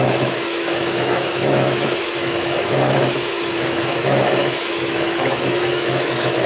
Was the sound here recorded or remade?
remade